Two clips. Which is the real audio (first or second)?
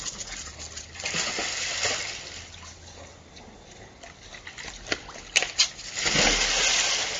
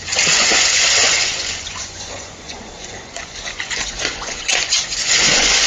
first